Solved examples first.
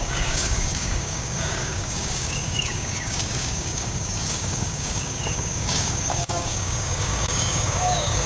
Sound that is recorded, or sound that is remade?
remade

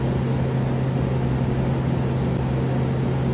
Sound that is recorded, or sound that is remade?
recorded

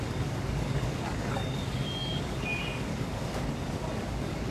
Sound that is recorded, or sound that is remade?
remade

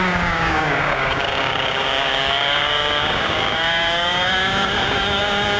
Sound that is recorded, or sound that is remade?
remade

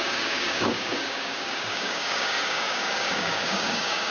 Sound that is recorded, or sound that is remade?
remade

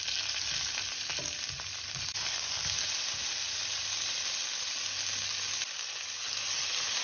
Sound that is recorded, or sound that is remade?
recorded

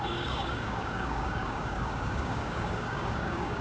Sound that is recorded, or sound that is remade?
remade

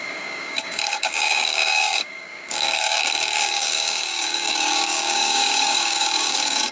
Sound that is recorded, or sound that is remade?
remade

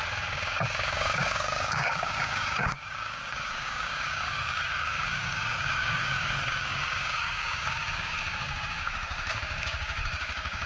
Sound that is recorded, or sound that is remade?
remade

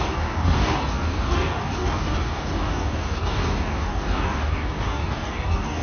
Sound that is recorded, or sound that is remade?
remade